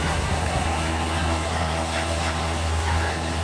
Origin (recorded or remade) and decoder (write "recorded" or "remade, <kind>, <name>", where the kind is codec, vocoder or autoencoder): remade, codec, SNAC